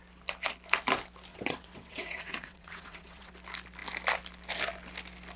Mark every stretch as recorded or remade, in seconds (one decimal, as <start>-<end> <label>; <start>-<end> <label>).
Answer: 0.0-1.3 recorded; 1.3-3.3 remade; 3.3-5.4 recorded